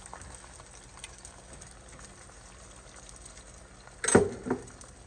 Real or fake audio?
real